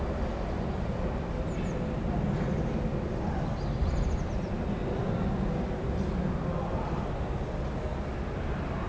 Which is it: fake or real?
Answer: real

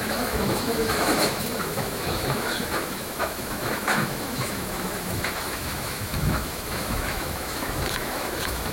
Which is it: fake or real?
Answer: fake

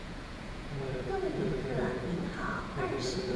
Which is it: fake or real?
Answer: fake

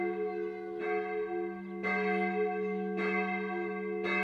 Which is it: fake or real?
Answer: real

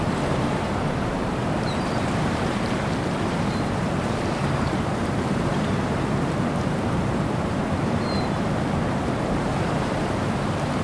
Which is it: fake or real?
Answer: fake